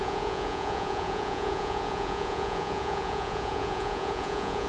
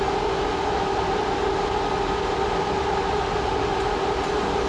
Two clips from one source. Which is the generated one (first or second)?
first